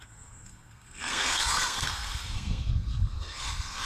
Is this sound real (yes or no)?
no